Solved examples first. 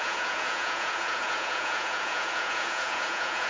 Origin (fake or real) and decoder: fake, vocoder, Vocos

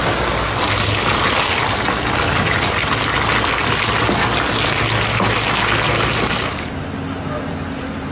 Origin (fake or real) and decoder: real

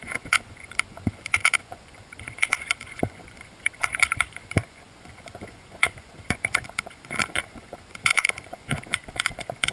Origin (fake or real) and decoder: fake, vocoder, Vocos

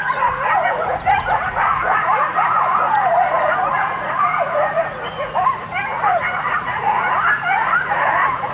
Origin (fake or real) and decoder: fake, vocoder, Vocos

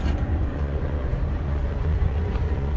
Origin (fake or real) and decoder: fake, vocoder, Vocos